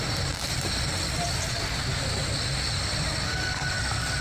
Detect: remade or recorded recorded